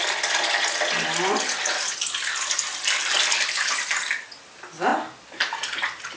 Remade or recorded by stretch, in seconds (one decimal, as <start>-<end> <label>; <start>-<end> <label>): 0.0-6.2 recorded